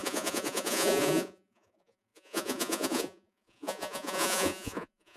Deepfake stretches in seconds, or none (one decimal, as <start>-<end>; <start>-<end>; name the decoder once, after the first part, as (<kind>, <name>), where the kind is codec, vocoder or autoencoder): 0.0-5.2 (vocoder, Vocos)

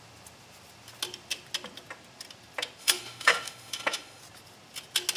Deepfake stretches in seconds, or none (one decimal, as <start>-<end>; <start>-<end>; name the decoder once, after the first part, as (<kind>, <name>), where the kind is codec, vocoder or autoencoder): 2.8-4.2 (autoencoder, DAC-VAE)

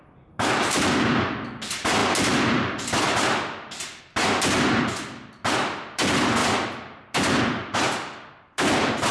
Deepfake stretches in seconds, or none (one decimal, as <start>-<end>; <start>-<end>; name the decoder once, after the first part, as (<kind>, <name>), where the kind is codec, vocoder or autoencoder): none

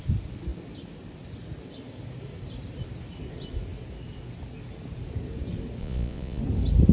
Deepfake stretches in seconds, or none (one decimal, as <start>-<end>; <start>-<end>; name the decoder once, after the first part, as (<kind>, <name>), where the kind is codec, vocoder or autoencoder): 5.8-6.4 (vocoder, Vocos)

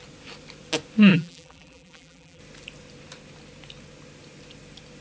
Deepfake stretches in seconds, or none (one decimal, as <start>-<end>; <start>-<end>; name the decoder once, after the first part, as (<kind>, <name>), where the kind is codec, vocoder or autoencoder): 1.1-2.4 (vocoder, BigVGAN v2)

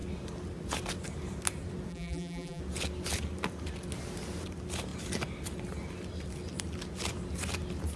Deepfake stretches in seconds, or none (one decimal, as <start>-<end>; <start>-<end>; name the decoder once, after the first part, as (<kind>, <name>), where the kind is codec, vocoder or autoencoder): 1.9-2.6 (vocoder, BigVGAN v2)

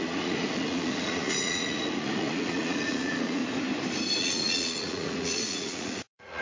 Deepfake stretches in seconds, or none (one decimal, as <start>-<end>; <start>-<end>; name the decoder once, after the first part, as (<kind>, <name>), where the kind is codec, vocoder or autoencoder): 0.0-3.4 (vocoder, Vocos); 4.2-6.4

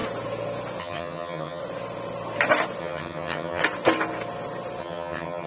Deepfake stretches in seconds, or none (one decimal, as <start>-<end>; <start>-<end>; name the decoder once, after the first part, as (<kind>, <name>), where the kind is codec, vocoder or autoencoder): 0.8-1.6 (vocoder, HiFi-GAN); 2.8-3.6; 4.8-5.5